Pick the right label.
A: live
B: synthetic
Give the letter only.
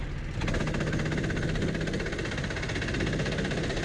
A